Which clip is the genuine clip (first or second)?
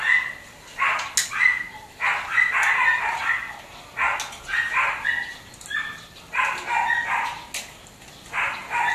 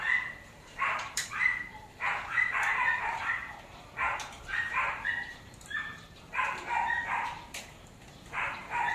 first